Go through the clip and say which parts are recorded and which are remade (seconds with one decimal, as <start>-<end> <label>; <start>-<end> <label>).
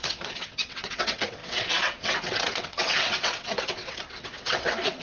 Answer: 0.0-5.0 remade